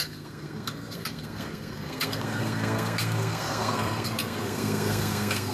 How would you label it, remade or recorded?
remade